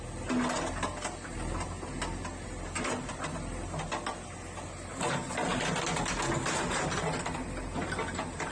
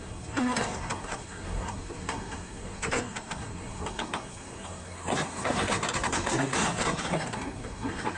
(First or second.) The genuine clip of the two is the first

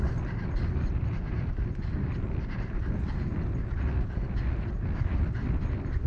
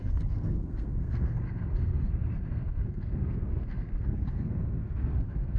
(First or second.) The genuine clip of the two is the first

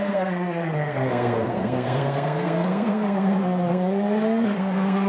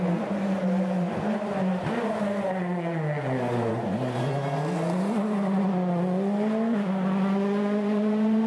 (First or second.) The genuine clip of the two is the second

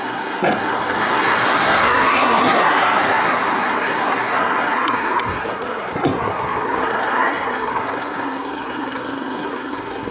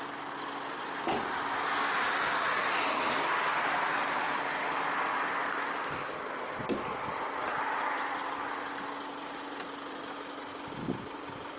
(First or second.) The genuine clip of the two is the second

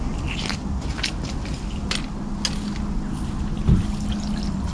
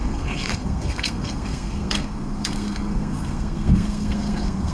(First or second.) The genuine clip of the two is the first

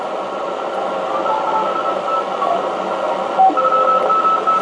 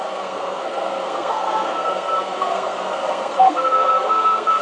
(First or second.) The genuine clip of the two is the first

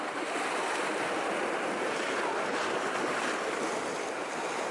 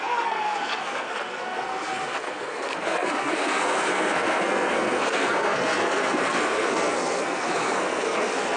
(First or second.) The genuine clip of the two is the first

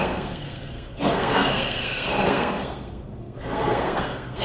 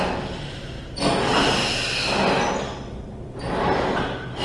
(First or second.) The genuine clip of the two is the second